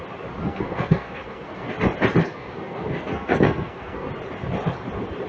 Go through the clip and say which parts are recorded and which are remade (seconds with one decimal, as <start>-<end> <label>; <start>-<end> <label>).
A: 0.0-0.4 recorded; 0.4-1.7 remade; 1.7-2.2 recorded; 2.2-4.1 remade; 4.1-5.3 recorded